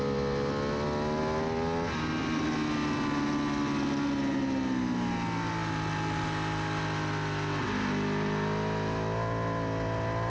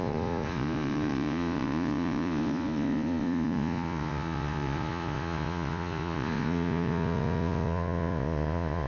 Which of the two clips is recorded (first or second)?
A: first